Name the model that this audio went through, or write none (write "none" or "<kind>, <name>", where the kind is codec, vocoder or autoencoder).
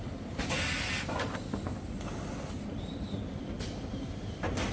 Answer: none